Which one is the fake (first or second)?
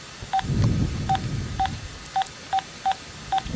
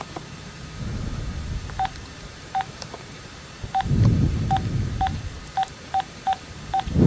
second